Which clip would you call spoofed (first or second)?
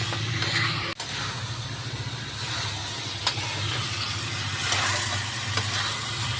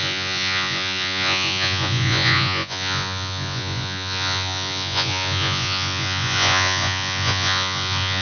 second